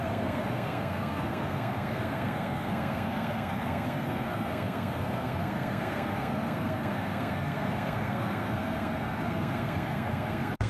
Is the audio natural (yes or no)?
no